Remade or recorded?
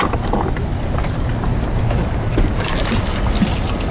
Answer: recorded